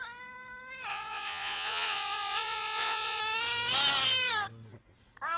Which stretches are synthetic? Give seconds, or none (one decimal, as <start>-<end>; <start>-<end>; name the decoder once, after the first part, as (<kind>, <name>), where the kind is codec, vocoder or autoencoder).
0.9-3.2 (vocoder, Vocos)